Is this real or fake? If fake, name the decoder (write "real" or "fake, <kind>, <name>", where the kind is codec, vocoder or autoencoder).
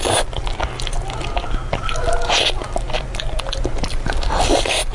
real